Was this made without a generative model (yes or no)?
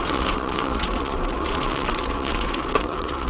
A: no